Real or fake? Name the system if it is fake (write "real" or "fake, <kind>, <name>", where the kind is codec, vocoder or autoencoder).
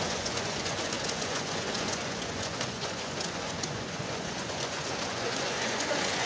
fake, vocoder, Vocos